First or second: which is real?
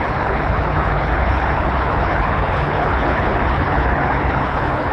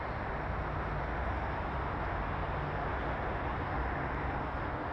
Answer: second